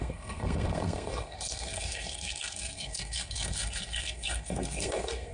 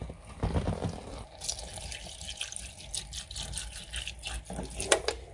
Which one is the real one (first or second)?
second